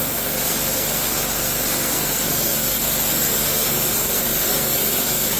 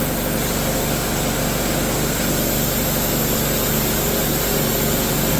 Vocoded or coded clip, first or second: first